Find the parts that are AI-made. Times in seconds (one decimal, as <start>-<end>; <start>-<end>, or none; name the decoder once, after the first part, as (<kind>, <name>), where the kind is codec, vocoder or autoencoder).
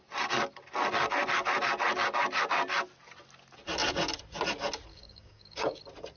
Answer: 4.9-5.8 (codec, DAC)